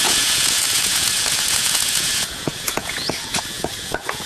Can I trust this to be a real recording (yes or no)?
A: no